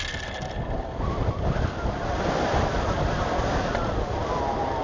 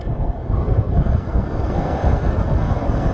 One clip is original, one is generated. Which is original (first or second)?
first